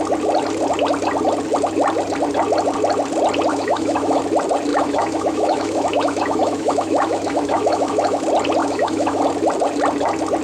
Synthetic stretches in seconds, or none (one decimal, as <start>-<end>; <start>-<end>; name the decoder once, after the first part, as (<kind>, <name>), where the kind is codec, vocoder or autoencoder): 3.5-4.2 (autoencoder, DAC-VAE); 4.7-8.2; 8.6-9.2